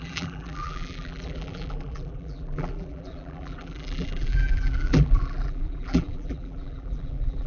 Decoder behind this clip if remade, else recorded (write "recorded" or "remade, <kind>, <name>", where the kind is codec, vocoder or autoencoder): remade, vocoder, BigVGAN v2